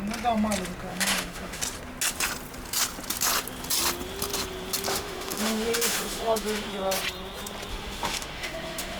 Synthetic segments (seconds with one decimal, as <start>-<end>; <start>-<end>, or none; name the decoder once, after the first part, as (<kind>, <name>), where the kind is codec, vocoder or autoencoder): 0.9-1.6 (autoencoder, DAC-VAE); 4.9-6.7; 7.7-9.0